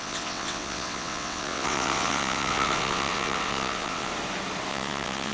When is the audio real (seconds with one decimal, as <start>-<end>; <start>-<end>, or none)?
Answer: 4.1-4.7